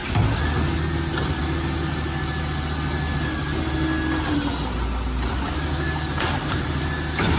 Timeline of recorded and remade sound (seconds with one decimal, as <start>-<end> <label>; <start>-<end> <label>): 0.0-7.4 recorded